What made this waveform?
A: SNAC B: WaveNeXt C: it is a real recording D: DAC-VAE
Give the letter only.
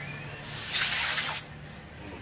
C